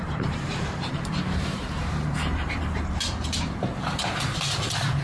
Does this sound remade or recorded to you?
remade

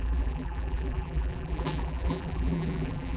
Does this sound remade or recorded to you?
remade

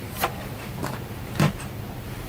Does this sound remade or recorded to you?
remade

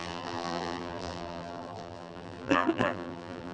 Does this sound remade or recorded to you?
remade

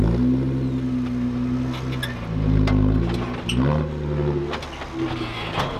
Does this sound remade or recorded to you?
recorded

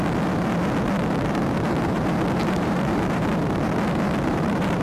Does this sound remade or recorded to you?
remade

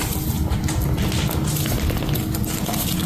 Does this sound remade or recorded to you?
recorded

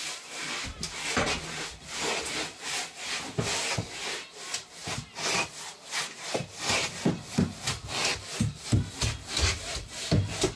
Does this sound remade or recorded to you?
recorded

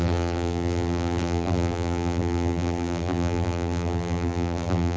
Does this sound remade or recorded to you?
remade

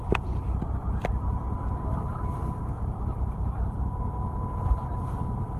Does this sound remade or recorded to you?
remade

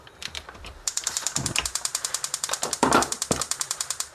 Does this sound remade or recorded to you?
remade